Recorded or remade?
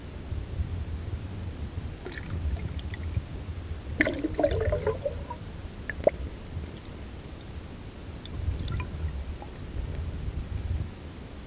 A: recorded